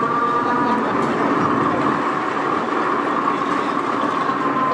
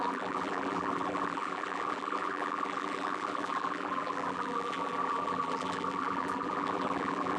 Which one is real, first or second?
first